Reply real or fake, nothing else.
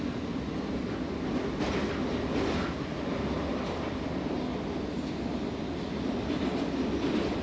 real